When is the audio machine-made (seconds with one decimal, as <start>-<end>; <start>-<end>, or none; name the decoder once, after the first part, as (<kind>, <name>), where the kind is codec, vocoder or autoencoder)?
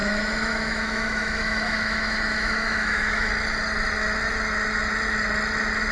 0.0-3.3 (autoencoder, DAC-VAE)